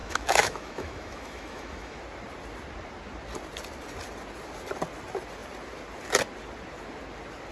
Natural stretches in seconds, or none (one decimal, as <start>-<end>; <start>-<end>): 2.0-7.5